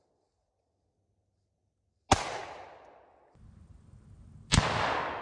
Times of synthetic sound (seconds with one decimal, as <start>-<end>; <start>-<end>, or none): none